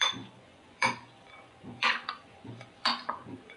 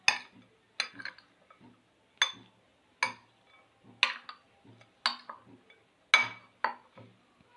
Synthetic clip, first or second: first